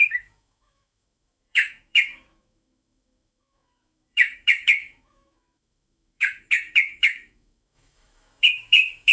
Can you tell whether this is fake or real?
fake